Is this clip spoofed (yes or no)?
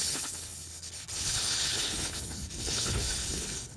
yes